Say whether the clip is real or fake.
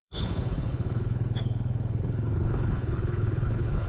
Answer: fake